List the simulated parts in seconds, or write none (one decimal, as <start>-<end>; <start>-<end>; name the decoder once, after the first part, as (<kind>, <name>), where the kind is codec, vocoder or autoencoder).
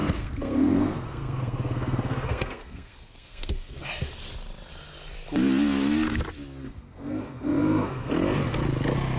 0.0-3.8 (codec, SNAC); 6.6-8.1